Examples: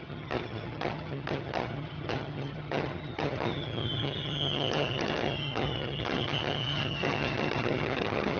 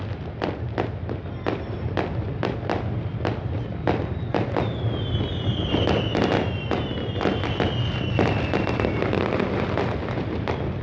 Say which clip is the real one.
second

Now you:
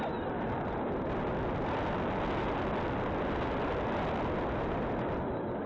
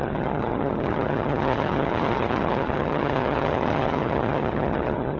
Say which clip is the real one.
first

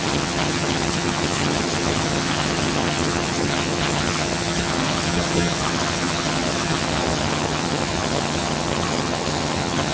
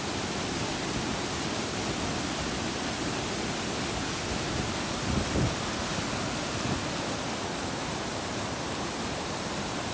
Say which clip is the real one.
second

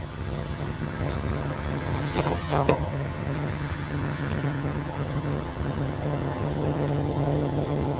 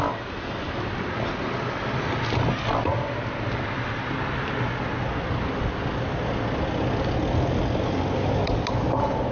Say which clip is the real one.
second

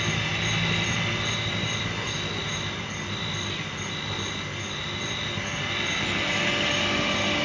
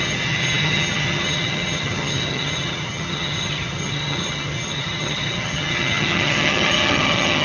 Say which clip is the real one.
first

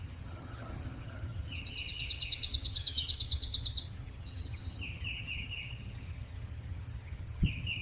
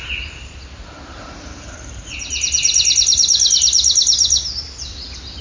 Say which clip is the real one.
second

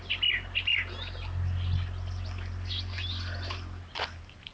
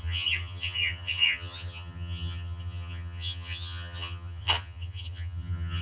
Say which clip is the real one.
first